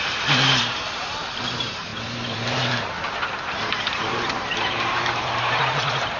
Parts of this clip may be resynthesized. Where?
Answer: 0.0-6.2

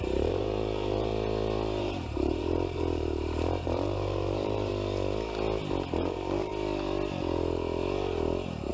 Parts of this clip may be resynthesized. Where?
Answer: 0.0-1.1; 1.8-4.7; 5.9-6.5